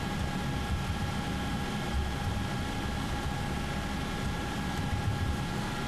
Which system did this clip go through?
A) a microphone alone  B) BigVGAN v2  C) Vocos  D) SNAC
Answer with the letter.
B